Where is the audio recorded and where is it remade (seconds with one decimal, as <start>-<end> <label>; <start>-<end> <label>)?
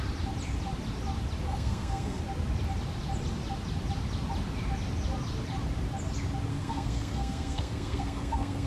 0.0-1.5 recorded; 1.5-2.2 remade; 2.2-6.5 recorded; 6.5-8.7 remade